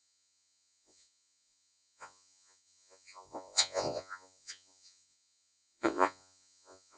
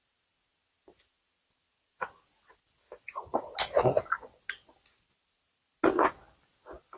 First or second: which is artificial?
first